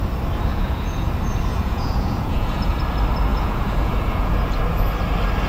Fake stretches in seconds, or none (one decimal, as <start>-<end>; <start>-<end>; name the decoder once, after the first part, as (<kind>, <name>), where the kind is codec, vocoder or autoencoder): 0.5-1.1 (vocoder, Vocos); 1.5-2.8; 3.3-4.3